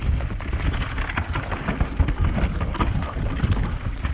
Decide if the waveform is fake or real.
real